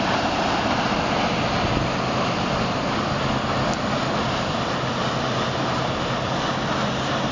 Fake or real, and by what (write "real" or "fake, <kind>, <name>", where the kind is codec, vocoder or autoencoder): real